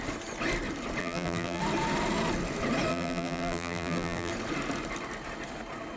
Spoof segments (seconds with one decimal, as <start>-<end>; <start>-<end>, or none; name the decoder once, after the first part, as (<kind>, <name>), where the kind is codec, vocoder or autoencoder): 1.0-1.6 (vocoder, BigVGAN v2); 2.9-4.3